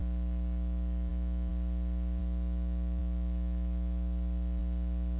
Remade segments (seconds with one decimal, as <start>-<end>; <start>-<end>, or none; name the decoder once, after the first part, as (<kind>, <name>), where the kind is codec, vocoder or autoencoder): 0.0-1.5 (autoencoder, DAC-VAE); 2.2-5.2